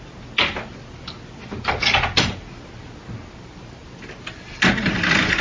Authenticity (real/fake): real